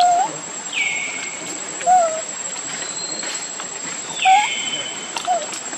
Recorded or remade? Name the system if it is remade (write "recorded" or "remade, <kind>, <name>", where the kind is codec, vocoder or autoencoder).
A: remade, vocoder, BigVGAN v2